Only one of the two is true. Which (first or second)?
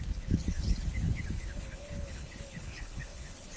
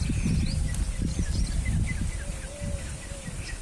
second